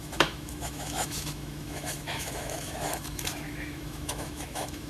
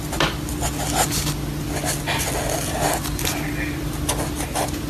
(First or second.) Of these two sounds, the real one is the second